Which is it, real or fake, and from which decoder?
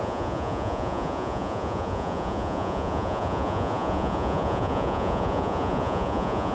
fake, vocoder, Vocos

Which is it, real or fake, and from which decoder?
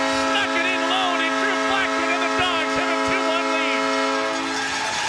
real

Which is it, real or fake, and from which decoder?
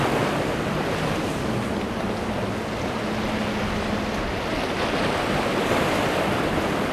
real